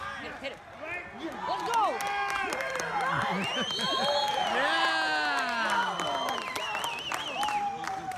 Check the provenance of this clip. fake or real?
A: real